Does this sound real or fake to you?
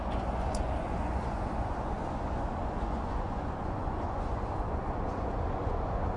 fake